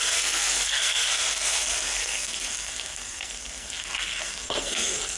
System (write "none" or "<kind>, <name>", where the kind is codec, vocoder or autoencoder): codec, SNAC